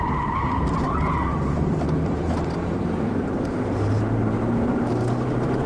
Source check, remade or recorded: remade